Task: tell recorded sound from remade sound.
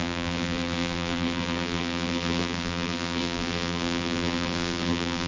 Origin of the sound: remade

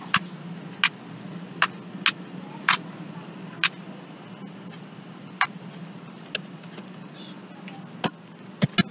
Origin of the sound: recorded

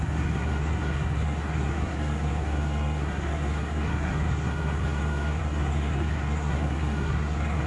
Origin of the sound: remade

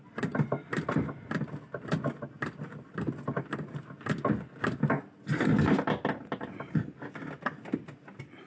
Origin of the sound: recorded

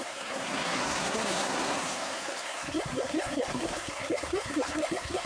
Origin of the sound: remade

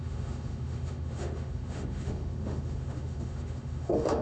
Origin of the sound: remade